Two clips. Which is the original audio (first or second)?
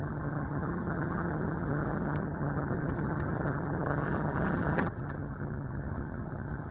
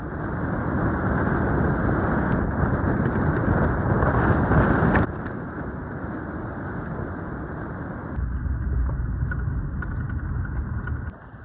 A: second